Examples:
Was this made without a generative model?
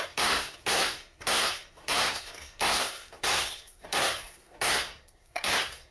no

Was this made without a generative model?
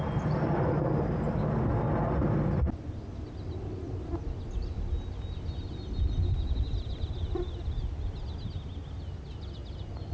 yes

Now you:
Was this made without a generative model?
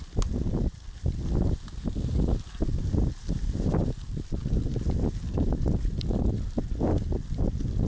yes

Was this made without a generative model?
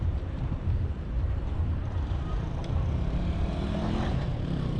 no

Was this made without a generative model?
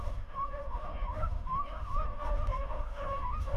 no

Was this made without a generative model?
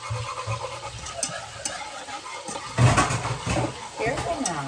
yes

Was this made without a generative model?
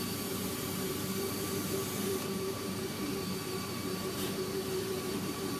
no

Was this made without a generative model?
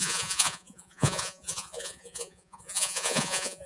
no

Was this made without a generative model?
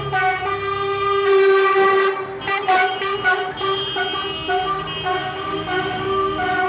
yes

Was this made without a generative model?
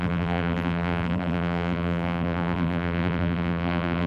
no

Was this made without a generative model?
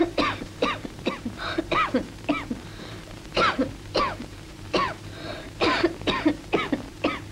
no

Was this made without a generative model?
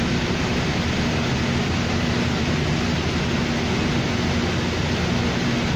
yes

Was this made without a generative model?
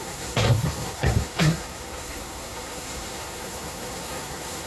no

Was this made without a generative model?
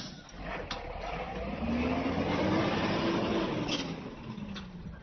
yes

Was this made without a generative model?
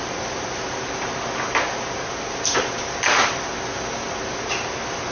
yes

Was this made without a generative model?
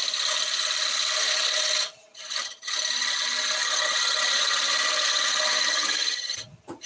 yes